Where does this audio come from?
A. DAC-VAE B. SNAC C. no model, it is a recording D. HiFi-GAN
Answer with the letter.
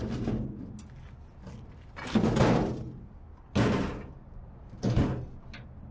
C